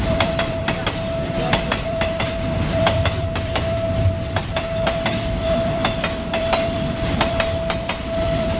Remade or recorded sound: remade